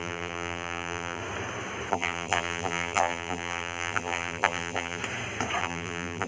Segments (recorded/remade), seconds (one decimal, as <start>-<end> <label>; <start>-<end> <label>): 0.0-1.2 remade; 1.2-1.9 recorded; 1.9-5.0 remade; 5.0-5.6 recorded; 5.6-6.3 remade